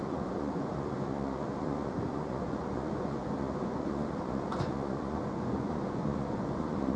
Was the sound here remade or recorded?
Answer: remade